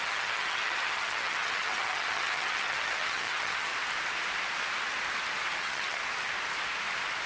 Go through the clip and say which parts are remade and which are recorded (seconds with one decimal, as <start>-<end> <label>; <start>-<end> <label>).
0.0-3.7 remade; 3.7-5.6 recorded; 5.6-6.0 remade; 6.0-7.3 recorded